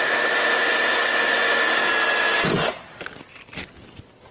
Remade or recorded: recorded